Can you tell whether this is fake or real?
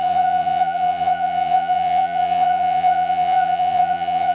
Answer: fake